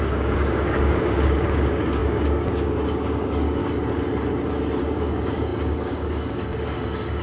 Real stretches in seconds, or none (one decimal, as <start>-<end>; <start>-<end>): 3.6-4.8